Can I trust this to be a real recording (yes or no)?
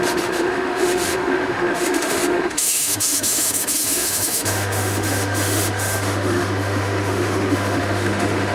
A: no